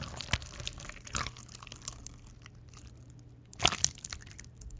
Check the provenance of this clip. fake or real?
real